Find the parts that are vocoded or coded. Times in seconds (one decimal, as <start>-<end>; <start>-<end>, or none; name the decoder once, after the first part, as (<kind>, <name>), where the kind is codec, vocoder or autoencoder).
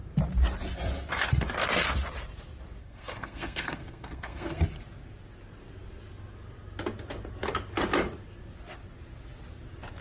2.8-4.6 (codec, SNAC)